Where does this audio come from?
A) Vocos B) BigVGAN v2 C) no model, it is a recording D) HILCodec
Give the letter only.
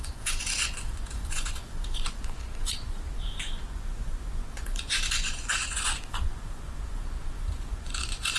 A